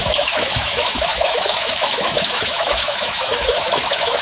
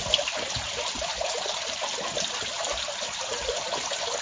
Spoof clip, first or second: first